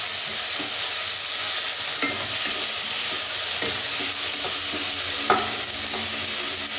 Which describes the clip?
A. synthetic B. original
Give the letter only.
B